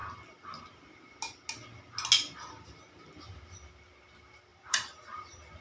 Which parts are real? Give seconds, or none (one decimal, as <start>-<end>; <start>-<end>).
0.0-4.5